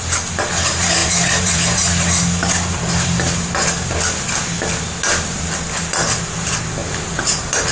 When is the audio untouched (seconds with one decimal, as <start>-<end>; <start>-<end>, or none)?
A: 0.0-1.0; 3.5-6.8